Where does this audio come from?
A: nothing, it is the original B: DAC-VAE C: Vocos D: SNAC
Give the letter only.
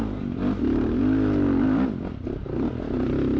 A